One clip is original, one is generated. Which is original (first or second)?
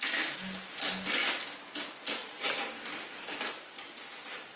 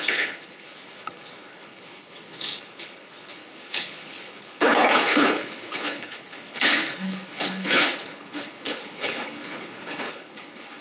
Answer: first